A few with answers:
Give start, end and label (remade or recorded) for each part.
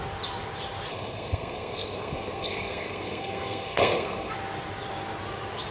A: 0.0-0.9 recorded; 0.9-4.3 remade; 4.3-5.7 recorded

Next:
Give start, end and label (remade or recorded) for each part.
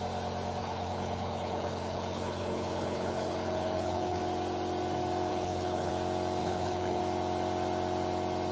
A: 0.0-0.6 recorded; 0.6-4.2 remade; 4.2-5.3 recorded; 5.3-5.9 remade; 5.9-6.4 recorded; 6.4-7.0 remade; 7.0-8.5 recorded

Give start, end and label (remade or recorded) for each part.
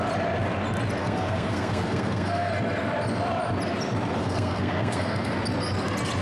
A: 0.0-1.0 recorded; 1.0-2.5 remade; 2.5-4.2 recorded; 4.2-5.3 remade; 5.3-6.2 recorded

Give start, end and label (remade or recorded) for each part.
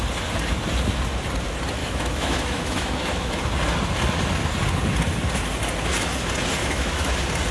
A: 0.0-1.8 recorded; 1.8-3.4 remade; 3.4-6.6 recorded; 6.6-7.1 remade; 7.1-7.5 recorded